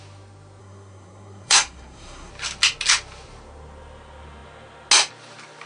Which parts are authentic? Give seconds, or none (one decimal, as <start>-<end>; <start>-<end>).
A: 0.0-0.6; 2.3-5.7